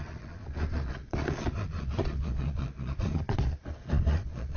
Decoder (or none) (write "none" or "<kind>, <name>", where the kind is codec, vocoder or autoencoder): vocoder, Vocos